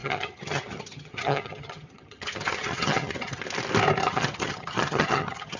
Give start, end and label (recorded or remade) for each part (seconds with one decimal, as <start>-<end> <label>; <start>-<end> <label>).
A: 0.0-3.4 remade; 3.4-4.0 recorded; 4.0-5.6 remade